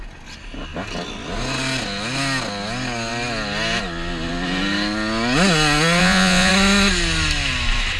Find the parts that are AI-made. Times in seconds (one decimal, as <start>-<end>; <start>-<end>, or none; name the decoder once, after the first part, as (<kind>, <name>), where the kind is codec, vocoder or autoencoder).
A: 6.0-6.5 (vocoder, Vocos)